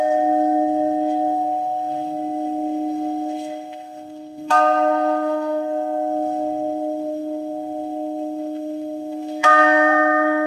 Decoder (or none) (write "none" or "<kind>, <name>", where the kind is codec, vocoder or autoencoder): codec, SNAC